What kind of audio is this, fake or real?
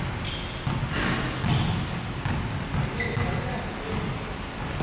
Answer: real